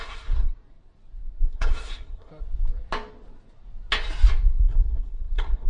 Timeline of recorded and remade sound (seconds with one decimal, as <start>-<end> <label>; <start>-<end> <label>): 0.0-0.5 remade; 0.5-1.4 recorded; 1.4-2.3 remade; 2.3-4.6 recorded; 4.6-5.7 remade